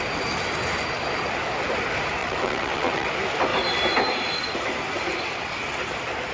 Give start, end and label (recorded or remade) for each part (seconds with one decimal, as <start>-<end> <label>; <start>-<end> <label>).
0.0-2.2 recorded; 2.2-3.1 remade; 3.1-6.3 recorded